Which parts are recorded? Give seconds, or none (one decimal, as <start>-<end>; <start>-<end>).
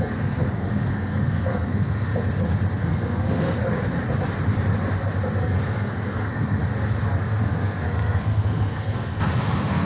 2.1-2.8; 3.6-5.4; 6.6-7.2